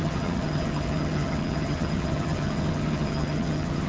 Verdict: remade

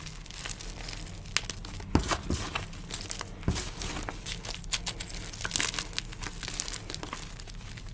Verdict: recorded